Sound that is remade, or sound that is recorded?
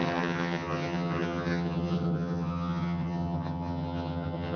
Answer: remade